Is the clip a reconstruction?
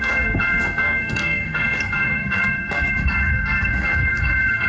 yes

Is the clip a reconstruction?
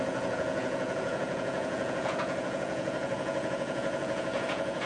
yes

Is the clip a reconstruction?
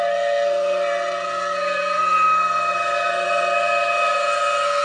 yes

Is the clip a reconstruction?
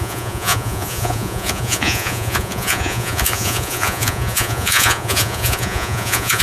yes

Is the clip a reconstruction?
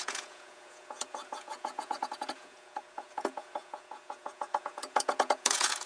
yes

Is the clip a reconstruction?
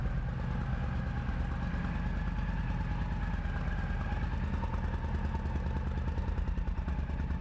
no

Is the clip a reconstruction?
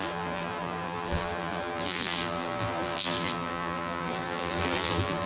yes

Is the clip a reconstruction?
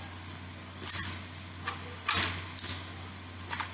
no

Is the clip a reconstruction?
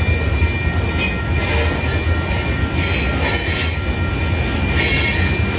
no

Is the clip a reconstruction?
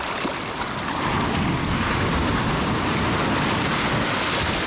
no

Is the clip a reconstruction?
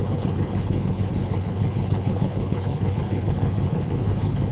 yes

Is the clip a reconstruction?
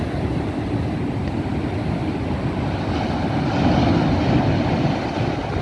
no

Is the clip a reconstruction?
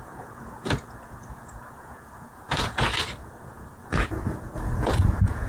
yes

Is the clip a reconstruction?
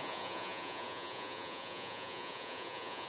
yes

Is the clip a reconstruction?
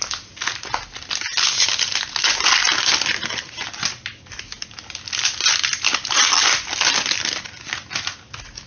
no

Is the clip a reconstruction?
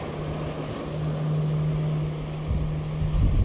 no